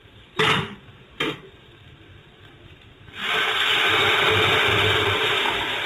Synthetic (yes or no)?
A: no